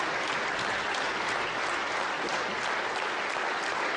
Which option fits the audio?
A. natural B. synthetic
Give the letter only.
A